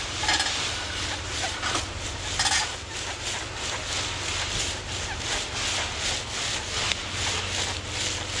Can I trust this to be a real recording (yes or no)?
yes